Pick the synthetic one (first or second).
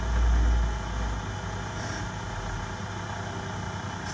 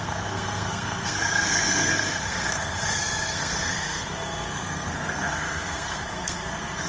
second